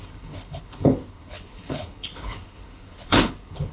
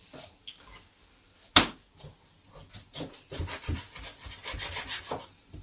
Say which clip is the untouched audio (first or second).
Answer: second